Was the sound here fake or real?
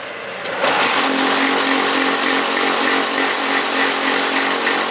real